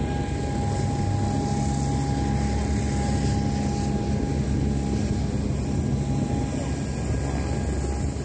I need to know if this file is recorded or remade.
recorded